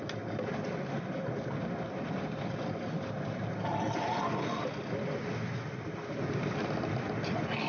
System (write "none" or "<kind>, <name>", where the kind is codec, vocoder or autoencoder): none